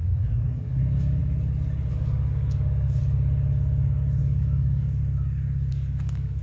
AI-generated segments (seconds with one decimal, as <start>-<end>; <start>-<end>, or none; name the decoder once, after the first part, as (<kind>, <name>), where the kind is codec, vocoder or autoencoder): 0.0-1.2 (codec, DAC); 1.9-3.0; 4.2-5.0; 5.7-6.4